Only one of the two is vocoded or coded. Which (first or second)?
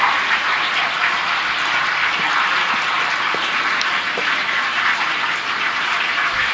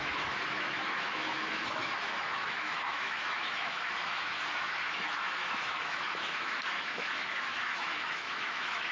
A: second